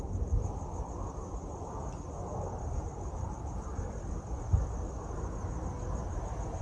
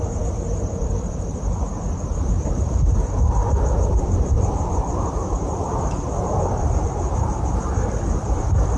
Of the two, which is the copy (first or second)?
second